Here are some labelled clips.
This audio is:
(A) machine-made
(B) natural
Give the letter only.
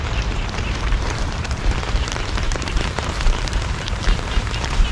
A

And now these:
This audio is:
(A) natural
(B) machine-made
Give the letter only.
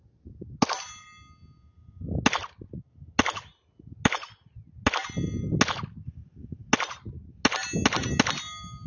A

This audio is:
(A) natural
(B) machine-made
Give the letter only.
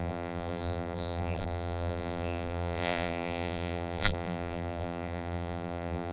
B